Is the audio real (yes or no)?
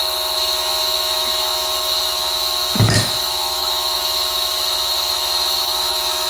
no